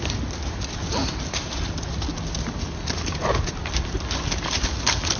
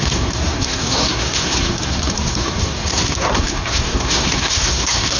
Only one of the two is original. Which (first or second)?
first